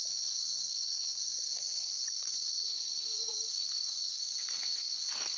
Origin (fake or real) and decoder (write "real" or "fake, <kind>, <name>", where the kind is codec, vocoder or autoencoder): fake, codec, SNAC